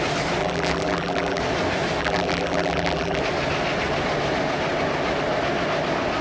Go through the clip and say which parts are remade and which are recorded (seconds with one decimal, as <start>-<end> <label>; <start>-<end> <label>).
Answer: 0.0-0.4 recorded; 0.4-1.4 remade; 1.4-2.0 recorded; 2.0-3.2 remade; 3.2-6.2 recorded